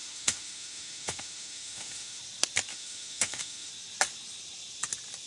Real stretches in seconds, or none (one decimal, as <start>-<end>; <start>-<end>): 2.2-2.7; 3.7-5.3